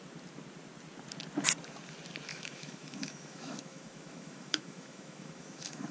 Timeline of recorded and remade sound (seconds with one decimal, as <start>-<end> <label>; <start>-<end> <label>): 0.0-2.3 recorded; 2.3-5.9 remade